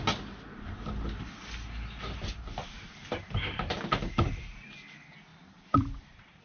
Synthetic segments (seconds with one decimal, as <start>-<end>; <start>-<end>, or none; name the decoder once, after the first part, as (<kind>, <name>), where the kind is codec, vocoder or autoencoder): 3.0-3.7 (vocoder, BigVGAN v2); 5.3-6.4